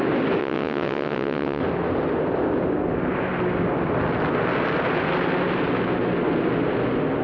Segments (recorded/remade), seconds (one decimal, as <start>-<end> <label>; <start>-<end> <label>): 0.0-0.4 recorded; 0.4-1.6 remade; 1.6-7.2 recorded